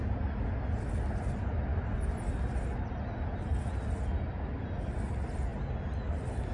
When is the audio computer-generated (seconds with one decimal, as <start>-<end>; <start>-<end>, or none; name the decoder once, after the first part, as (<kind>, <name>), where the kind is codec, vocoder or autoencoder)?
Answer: none